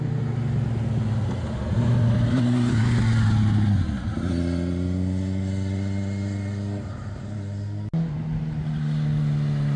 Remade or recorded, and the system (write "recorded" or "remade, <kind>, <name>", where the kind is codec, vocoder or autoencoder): recorded